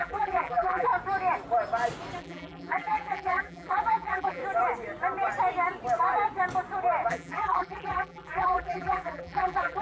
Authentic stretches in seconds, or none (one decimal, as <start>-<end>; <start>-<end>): 0.9-2.2; 4.4-7.1